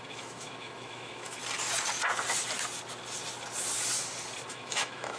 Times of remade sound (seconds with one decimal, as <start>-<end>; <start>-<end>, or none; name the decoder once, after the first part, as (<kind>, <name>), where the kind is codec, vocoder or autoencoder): 0.0-1.4 (autoencoder, DAC-VAE); 4.5-5.2

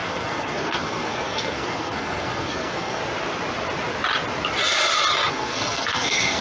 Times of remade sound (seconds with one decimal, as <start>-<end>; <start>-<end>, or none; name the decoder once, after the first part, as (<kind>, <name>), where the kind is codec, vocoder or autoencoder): 0.0-3.0 (codec, SNAC); 5.3-6.4

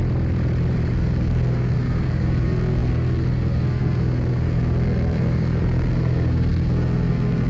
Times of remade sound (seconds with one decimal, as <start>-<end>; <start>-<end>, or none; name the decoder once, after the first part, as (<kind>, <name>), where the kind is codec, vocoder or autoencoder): 0.9-7.5 (codec, SNAC)

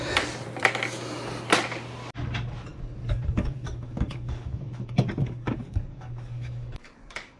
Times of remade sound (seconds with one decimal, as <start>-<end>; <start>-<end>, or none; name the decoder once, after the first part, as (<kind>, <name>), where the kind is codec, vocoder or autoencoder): 2.7-7.4 (codec, DAC)